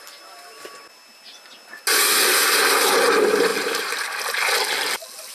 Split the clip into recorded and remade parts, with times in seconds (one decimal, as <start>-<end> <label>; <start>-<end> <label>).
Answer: 0.0-3.5 recorded; 3.5-4.2 remade; 4.2-5.3 recorded